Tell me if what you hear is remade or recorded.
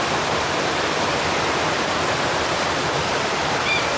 remade